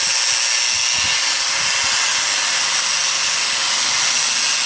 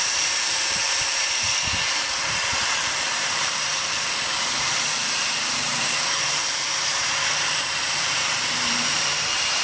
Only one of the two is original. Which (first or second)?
first